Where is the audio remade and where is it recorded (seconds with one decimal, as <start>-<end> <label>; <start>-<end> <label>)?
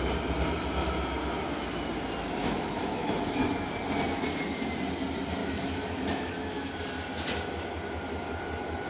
0.0-2.4 recorded; 2.4-3.5 remade; 3.5-5.4 recorded; 5.4-6.7 remade; 6.7-8.9 recorded